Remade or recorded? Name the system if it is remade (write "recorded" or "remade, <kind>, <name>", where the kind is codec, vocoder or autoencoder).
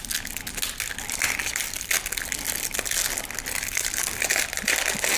recorded